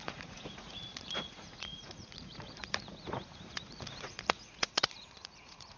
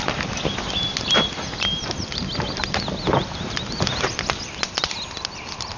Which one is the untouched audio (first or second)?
second